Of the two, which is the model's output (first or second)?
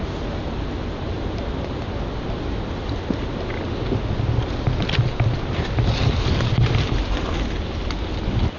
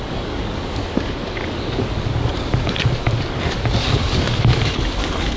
second